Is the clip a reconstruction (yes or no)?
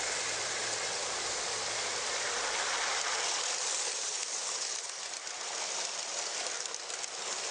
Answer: no